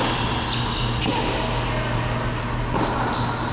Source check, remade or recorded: recorded